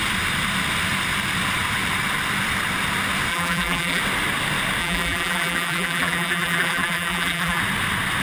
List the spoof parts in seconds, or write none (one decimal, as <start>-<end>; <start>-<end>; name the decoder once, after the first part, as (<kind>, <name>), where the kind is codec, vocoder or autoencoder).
3.3-4.0 (vocoder, BigVGAN v2); 4.8-7.6